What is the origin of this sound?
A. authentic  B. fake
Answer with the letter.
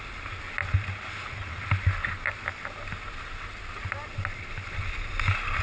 A